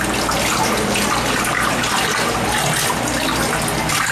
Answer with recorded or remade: recorded